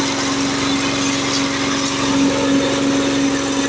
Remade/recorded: recorded